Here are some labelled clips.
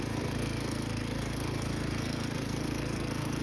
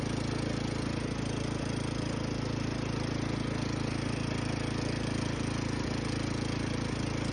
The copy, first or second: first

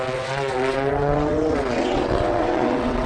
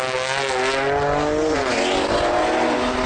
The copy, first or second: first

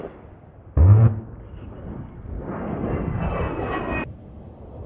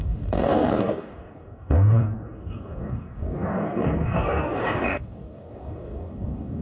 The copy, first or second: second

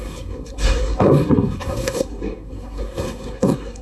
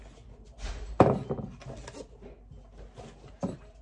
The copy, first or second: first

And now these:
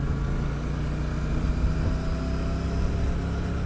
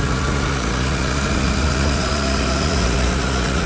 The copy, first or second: second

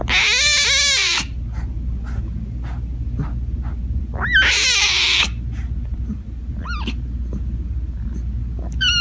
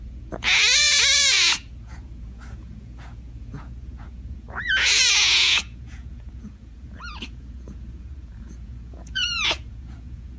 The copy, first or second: second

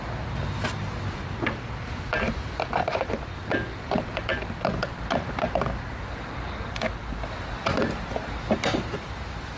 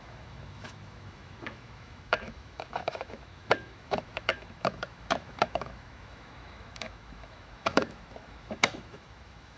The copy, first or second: second